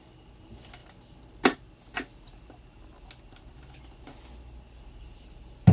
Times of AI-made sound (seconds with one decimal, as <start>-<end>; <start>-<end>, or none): none